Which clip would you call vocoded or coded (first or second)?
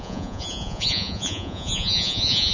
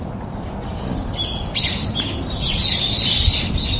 first